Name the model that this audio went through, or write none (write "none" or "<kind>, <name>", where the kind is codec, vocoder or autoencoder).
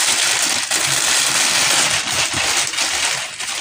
none